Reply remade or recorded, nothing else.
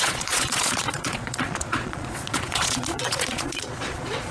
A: remade